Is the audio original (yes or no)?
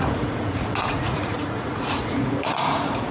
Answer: no